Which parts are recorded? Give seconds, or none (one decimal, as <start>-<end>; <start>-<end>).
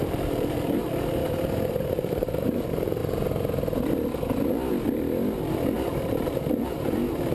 1.2-1.9; 3.0-6.0